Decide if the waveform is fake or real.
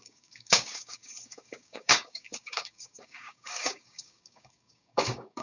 fake